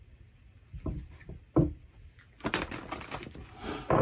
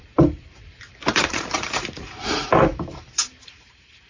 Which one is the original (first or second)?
first